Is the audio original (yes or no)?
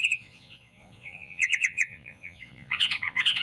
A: no